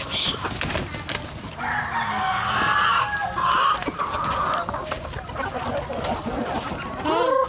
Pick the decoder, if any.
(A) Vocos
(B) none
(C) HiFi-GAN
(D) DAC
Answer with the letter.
B